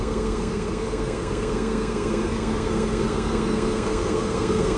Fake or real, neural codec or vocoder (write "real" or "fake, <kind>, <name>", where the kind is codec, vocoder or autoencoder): fake, codec, SNAC